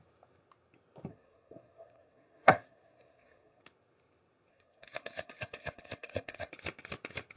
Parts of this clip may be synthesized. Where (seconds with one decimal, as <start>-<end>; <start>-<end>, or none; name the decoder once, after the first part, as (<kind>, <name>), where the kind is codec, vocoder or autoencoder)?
1.1-3.6 (codec, SNAC); 4.5-6.5